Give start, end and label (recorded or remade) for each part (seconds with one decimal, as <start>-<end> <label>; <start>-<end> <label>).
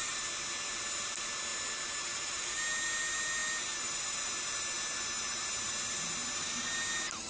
0.0-7.3 recorded